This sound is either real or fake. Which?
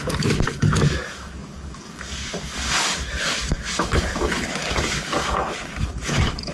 fake